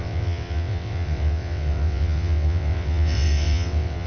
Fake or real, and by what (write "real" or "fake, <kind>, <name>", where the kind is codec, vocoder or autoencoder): fake, vocoder, WaveNeXt